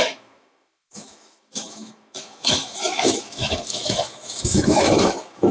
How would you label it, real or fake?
fake